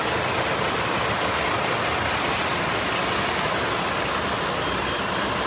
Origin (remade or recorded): recorded